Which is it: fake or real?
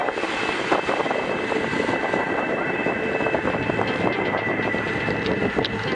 real